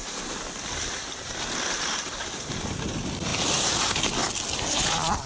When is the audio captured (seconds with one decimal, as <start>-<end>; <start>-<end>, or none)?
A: 0.8-5.3